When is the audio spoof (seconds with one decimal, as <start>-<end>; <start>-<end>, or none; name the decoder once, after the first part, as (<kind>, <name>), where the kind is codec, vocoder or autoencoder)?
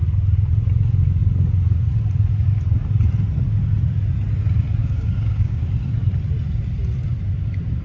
4.8-5.6 (codec, DAC)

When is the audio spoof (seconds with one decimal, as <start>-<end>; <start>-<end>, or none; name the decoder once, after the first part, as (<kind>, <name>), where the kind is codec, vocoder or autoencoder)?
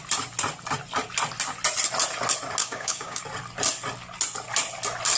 2.6-3.2 (codec, DAC)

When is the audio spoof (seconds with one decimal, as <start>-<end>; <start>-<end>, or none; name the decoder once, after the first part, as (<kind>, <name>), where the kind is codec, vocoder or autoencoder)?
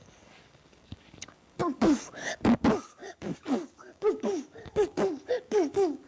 0.0-6.1 (codec, DAC)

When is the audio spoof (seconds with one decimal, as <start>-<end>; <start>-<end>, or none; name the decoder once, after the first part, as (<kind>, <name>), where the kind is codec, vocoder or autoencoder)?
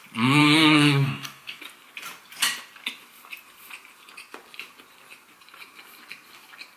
0.4-1.6 (codec, DAC)